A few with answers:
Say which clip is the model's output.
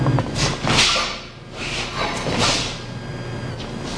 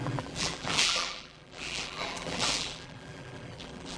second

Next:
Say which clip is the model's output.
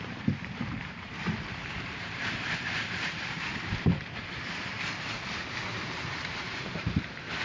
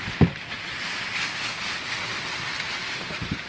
first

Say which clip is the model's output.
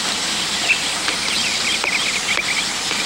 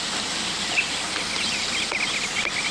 first